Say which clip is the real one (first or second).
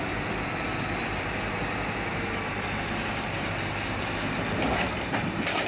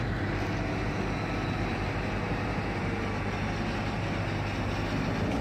second